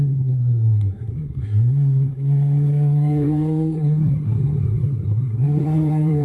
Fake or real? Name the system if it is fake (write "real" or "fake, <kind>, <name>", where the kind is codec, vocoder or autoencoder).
fake, codec, SNAC